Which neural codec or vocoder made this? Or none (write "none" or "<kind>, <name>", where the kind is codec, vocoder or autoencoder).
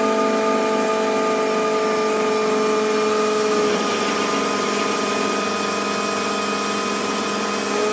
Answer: none